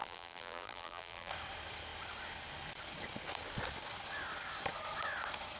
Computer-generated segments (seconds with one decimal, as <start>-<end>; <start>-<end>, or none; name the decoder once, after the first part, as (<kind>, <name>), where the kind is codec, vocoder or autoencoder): 0.0-1.3 (vocoder, BigVGAN v2)